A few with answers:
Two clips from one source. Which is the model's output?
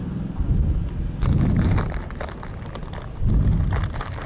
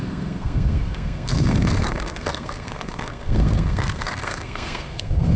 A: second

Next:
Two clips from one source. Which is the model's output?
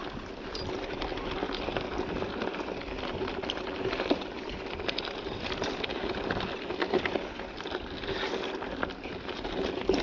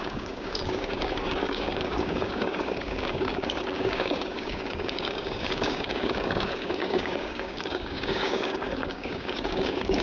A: second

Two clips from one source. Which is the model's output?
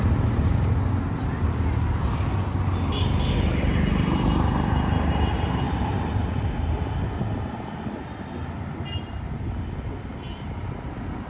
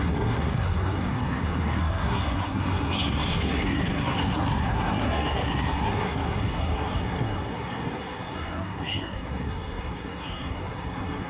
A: second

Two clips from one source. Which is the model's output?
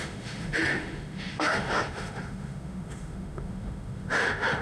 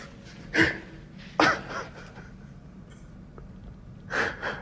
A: first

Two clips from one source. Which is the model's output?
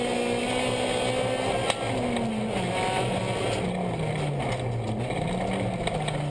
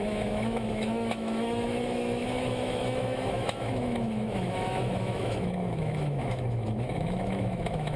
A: second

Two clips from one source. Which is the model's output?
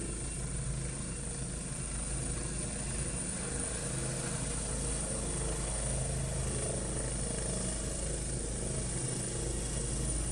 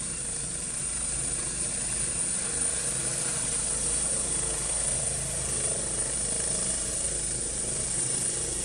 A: second